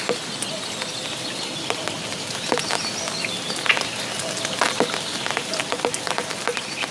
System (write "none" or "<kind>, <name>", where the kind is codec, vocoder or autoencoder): none